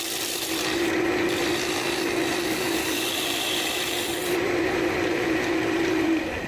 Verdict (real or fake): fake